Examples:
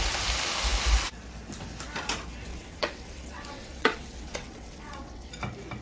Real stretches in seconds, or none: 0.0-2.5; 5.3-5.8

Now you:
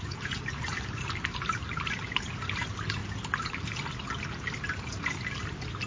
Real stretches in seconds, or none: 3.0-5.9

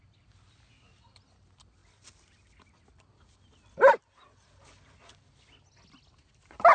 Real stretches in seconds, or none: 0.0-6.7

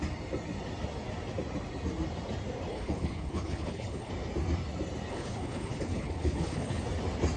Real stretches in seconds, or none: 0.0-2.7; 4.1-5.1; 6.8-7.4

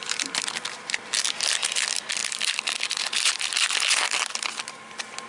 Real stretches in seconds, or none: 0.0-5.3

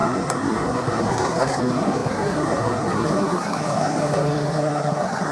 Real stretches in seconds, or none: none

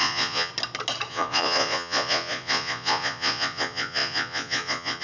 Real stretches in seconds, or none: 0.5-1.1

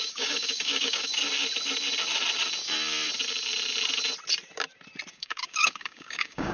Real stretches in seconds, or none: 1.2-5.1